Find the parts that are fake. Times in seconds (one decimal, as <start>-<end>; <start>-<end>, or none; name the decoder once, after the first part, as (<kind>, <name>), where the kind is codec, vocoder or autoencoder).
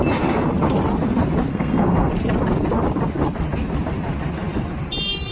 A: 1.5-2.1 (codec, SNAC)